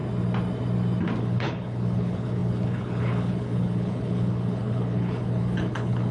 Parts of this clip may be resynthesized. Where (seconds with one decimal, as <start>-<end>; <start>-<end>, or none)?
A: 1.2-6.1